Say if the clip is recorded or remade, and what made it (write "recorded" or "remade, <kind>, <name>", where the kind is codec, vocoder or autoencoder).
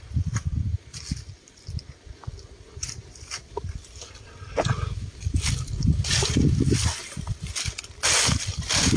recorded